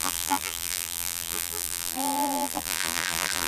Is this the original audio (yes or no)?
no